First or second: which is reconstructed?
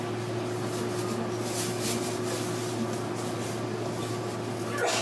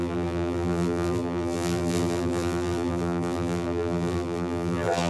second